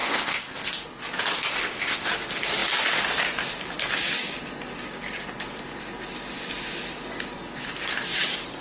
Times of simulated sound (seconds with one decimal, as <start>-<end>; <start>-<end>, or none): 0.0-0.7; 1.5-2.1